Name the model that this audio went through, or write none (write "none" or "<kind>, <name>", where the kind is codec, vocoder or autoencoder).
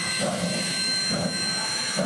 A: autoencoder, DAC-VAE